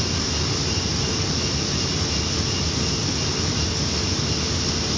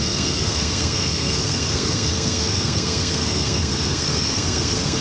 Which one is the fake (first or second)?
second